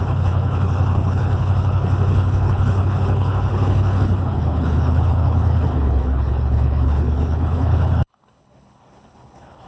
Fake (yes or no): yes